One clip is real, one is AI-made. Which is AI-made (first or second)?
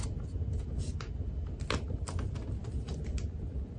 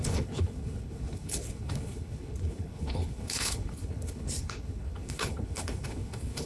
second